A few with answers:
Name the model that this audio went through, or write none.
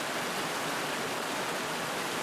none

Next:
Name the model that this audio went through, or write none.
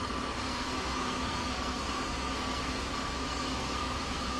codec, SNAC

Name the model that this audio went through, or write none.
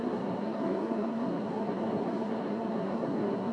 codec, SNAC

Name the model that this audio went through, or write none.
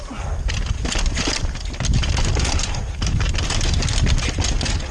none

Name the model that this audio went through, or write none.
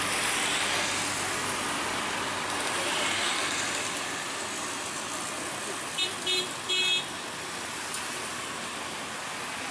none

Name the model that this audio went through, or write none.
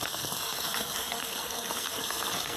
codec, SNAC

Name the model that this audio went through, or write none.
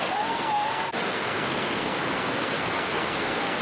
codec, SNAC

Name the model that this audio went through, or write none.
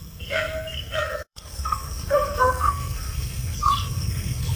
codec, SNAC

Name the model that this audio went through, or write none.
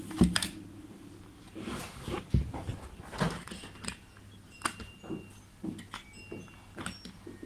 none